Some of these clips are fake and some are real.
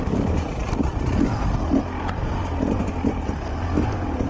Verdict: real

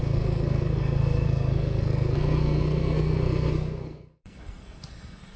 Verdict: fake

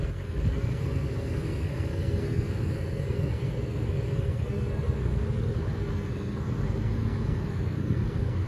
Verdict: fake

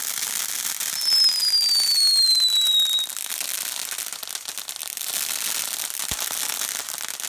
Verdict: real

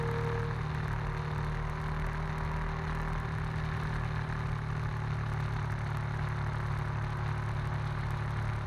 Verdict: real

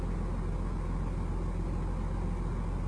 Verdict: real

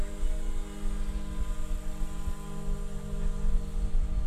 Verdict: real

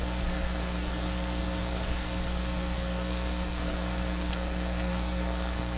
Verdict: fake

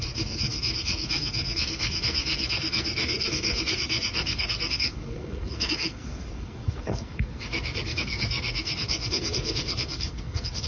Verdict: fake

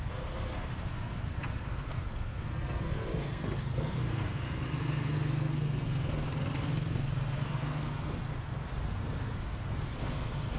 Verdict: fake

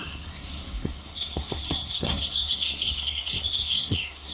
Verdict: fake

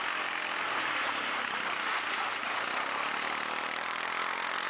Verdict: real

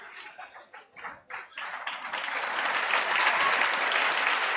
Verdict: real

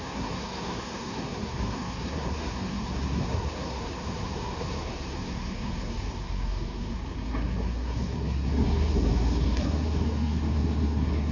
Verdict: fake